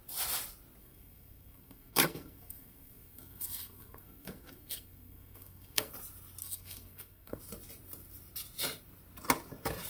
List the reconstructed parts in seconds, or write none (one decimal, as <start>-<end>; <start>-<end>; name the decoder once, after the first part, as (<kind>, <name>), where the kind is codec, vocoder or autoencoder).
0.8-5.9 (codec, SNAC); 6.4-7.4